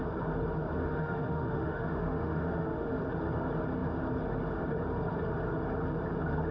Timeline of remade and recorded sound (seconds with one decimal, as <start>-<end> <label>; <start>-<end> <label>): 0.0-0.8 recorded; 0.8-3.0 remade; 3.0-6.5 recorded